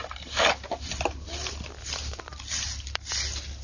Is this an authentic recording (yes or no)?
yes